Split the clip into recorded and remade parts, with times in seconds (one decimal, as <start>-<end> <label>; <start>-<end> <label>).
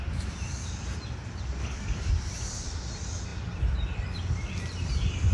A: 0.0-1.6 recorded; 1.6-2.1 remade; 2.1-5.3 recorded